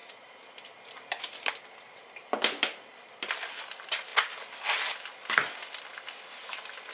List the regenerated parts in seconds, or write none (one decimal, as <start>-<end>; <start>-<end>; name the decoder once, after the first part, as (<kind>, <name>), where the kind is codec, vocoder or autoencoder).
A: 0.0-4.1 (vocoder, BigVGAN v2); 4.8-6.9